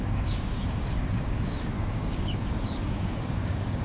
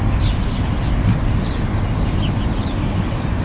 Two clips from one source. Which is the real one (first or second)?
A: second